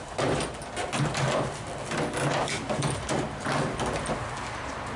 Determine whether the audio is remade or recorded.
recorded